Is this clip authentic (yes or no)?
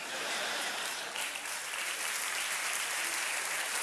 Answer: no